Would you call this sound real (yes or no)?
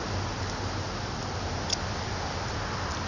yes